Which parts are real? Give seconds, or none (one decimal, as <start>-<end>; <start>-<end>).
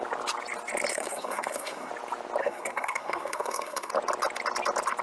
0.0-0.9; 1.9-2.4; 3.9-5.0